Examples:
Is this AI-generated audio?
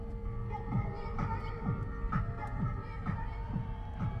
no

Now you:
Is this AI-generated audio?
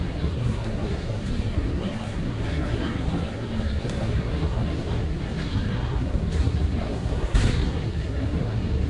yes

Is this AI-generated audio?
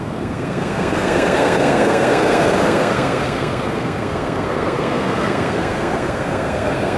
yes